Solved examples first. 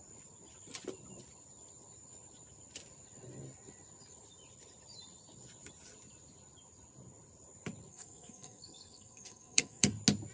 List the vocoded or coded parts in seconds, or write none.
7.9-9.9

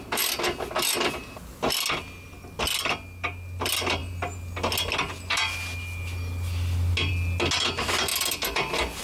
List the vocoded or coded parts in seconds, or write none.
none